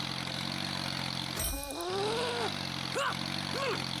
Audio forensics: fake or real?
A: real